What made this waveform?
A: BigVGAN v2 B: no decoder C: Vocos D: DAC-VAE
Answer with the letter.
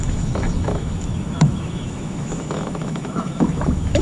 D